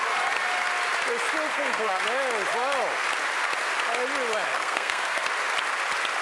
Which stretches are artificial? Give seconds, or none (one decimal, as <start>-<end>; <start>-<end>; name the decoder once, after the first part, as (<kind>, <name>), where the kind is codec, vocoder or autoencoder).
1.5-2.0 (codec, SNAC); 4.5-5.3

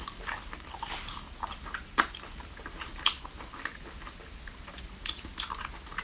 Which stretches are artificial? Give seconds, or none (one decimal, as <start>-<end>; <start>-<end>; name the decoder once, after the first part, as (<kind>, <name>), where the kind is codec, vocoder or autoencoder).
0.0-2.9 (vocoder, BigVGAN v2)

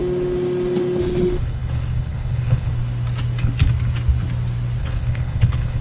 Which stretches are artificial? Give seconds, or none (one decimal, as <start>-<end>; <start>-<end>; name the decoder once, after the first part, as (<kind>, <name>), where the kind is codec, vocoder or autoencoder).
1.0-2.7 (codec, HILCodec); 4.8-5.8

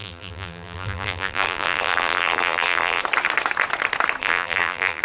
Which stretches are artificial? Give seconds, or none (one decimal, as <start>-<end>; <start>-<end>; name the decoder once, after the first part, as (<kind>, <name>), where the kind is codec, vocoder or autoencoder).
0.0-3.0 (vocoder, BigVGAN v2); 4.2-5.0

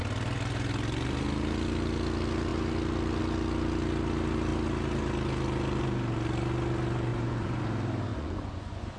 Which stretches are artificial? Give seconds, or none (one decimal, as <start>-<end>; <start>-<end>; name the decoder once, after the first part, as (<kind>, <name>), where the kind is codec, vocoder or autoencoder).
7.1-7.6 (vocoder, Vocos); 8.1-9.0